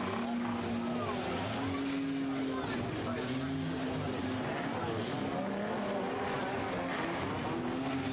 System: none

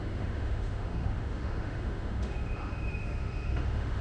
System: autoencoder, DAC-VAE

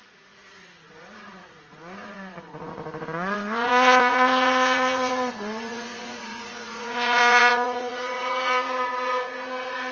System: vocoder, Vocos